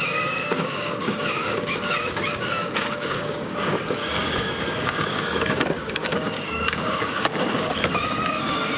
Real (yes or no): no